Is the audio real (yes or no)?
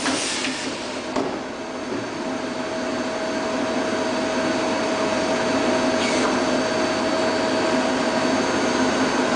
yes